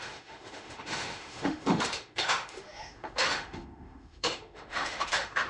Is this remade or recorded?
remade